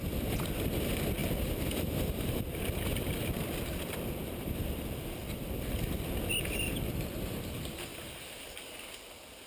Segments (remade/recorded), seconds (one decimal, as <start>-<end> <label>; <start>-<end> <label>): 0.0-1.2 recorded; 1.2-6.0 remade; 6.0-7.9 recorded; 7.9-8.6 remade; 8.6-9.5 recorded